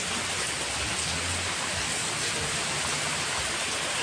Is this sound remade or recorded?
recorded